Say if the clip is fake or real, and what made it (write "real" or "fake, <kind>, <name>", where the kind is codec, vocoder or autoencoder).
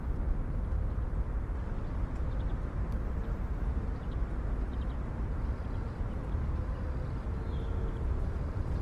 real